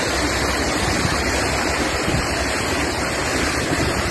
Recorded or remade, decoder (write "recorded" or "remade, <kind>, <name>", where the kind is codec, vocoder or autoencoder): remade, vocoder, BigVGAN v2